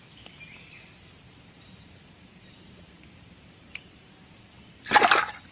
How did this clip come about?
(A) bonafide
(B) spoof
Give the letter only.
B